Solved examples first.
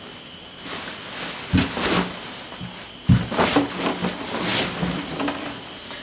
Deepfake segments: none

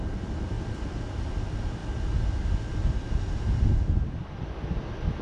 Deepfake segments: 0.0-1.8; 4.7-5.2

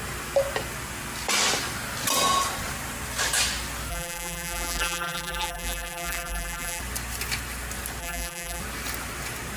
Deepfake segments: 3.9-6.8; 8.0-8.6

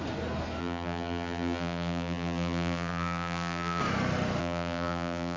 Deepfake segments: 0.6-3.8; 4.4-5.4

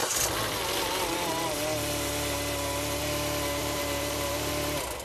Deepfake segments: 3.6-4.5

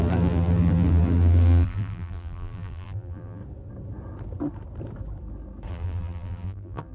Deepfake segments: 0.0-3.4; 5.7-6.9

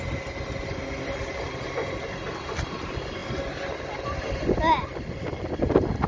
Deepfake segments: none